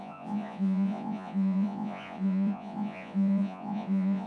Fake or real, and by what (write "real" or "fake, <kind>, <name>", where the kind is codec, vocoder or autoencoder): fake, vocoder, Vocos